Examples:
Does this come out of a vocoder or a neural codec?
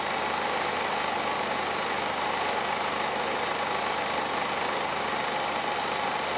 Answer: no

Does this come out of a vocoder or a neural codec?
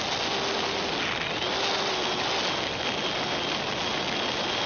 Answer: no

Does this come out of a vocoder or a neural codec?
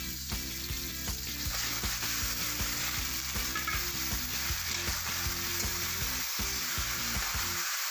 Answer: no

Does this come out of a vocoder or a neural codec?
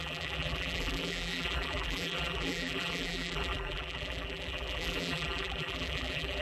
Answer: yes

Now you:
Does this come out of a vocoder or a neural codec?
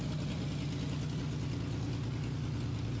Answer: no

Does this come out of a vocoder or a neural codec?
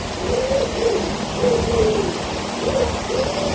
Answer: no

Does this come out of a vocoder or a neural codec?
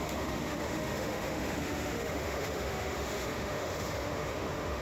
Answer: yes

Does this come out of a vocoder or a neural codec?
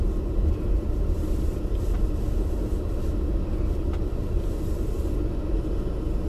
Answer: no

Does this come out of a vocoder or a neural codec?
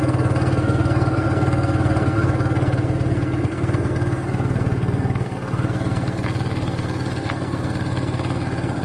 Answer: yes